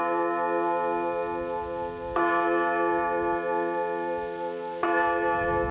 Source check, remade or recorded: recorded